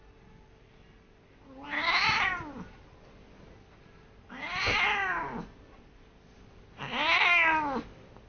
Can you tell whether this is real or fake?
real